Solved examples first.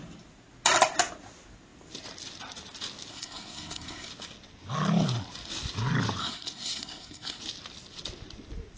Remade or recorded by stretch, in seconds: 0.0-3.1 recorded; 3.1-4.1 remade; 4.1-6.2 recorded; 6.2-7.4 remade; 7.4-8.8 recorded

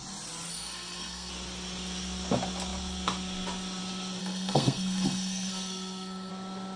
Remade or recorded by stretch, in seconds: 0.0-0.5 recorded; 0.5-1.3 remade; 1.3-4.2 recorded; 4.2-6.3 remade; 6.3-6.8 recorded

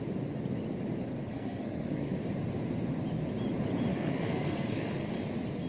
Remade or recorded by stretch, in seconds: 0.0-1.2 recorded; 1.2-2.2 remade; 2.2-3.9 recorded; 3.9-5.1 remade; 5.1-5.7 recorded

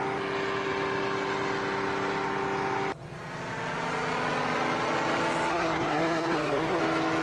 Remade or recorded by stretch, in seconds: 0.0-5.5 recorded; 5.5-6.8 remade; 6.8-7.2 recorded

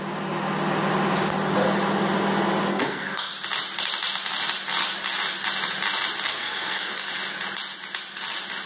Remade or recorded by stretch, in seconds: 0.0-2.7 recorded; 2.7-3.3 remade; 3.3-6.3 recorded; 6.3-7.1 remade; 7.1-8.7 recorded

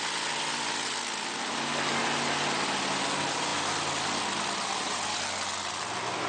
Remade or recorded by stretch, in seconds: 0.0-6.3 recorded

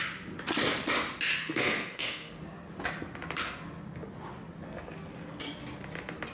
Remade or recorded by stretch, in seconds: 0.0-1.4 recorded; 1.4-2.4 remade; 2.4-6.3 recorded